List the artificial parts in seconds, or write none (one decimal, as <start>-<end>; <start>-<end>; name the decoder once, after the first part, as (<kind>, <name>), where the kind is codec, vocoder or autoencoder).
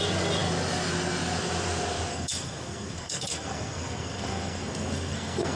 2.1-5.6 (codec, SNAC)